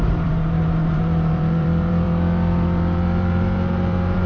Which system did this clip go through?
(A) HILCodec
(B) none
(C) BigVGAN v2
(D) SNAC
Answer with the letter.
C